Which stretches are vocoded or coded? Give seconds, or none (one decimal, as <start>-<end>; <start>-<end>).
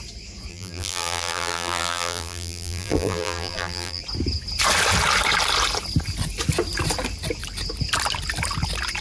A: 0.5-4.0